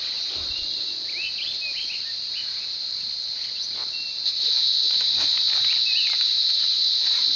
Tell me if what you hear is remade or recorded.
recorded